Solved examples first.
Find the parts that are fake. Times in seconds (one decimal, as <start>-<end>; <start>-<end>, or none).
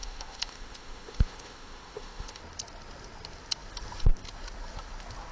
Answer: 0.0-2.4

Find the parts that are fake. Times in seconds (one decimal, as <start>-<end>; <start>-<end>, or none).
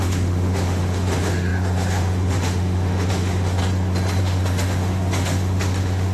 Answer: 0.0-3.6; 4.2-6.1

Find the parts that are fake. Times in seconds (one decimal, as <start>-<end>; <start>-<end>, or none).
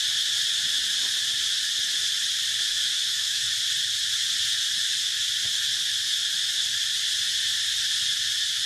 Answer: 2.7-3.5